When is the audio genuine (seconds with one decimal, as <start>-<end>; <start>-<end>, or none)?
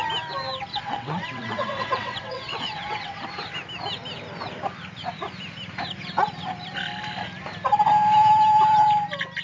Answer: 0.0-0.7; 3.3-9.4